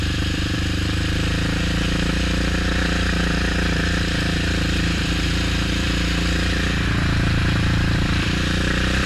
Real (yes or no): no